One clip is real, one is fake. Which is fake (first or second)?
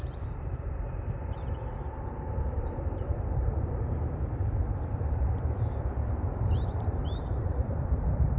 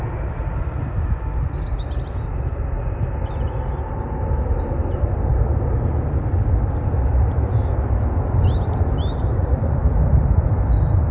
first